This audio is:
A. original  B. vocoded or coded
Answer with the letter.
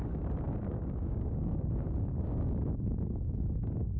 B